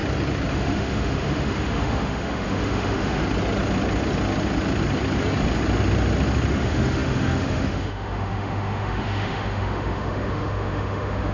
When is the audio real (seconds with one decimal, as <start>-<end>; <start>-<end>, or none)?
0.0-0.5; 3.2-6.5